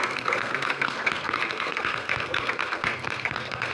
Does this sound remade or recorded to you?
remade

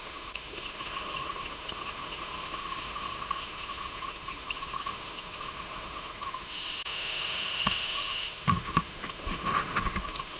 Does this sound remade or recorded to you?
remade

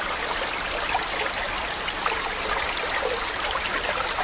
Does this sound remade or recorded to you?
recorded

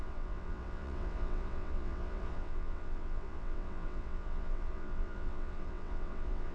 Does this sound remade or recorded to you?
remade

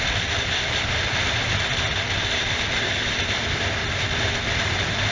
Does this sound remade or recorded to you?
recorded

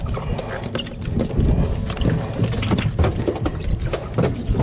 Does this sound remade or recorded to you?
recorded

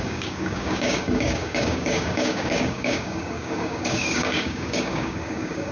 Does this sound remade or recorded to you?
remade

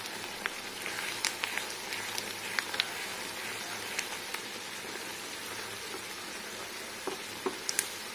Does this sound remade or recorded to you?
recorded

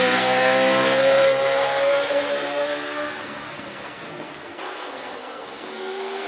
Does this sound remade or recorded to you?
remade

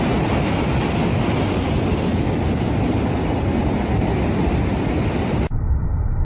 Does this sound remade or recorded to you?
recorded